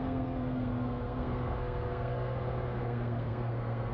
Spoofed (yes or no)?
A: yes